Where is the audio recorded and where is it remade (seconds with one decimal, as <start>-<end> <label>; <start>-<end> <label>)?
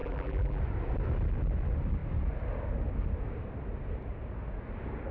0.0-0.6 remade; 0.6-5.1 recorded